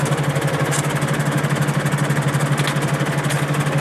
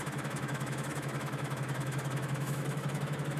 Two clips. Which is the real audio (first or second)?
first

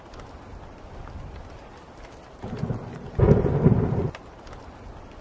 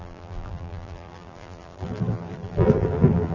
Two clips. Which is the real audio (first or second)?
first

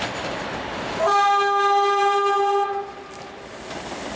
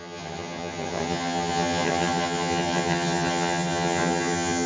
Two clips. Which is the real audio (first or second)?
first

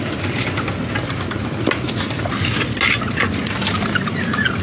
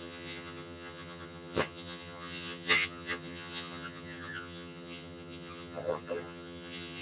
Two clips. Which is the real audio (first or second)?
first